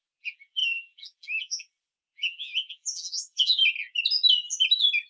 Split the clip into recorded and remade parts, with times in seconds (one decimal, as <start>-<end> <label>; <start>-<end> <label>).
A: 0.0-3.6 remade; 3.6-5.1 recorded